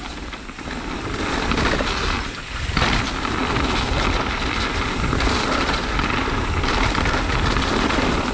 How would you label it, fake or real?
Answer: real